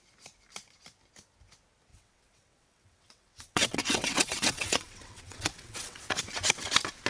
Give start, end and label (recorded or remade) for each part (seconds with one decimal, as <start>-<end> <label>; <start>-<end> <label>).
0.0-1.9 recorded; 1.9-6.2 remade; 6.2-7.1 recorded